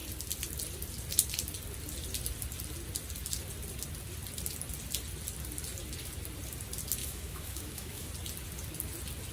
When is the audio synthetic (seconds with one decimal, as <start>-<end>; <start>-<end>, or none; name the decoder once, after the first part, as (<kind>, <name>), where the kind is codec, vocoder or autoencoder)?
7.0-8.1 (autoencoder, DAC-VAE)